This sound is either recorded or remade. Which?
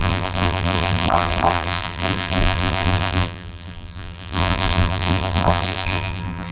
remade